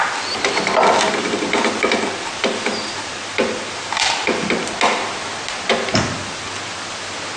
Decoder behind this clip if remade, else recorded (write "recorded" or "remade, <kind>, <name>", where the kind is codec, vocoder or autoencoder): recorded